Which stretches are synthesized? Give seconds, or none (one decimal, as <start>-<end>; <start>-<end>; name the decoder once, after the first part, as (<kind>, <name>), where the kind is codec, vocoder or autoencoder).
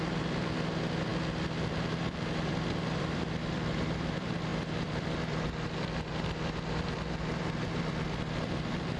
0.0-1.1 (vocoder, BigVGAN v2); 2.0-9.0